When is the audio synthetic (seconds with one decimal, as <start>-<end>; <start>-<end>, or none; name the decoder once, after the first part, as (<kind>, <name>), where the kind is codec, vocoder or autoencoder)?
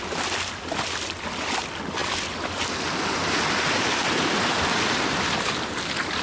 none